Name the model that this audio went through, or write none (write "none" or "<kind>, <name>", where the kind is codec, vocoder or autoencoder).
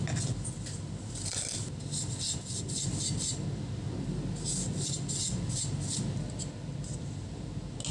none